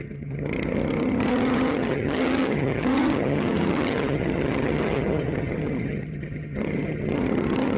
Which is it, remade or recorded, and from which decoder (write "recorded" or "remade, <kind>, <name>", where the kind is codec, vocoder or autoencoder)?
remade, vocoder, HiFi-GAN